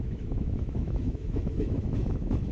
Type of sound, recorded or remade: remade